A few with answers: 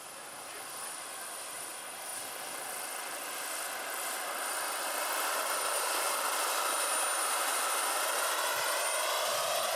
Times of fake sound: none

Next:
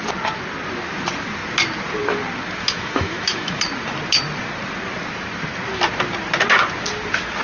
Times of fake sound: 2.6-3.6 (autoencoder, DAC-VAE)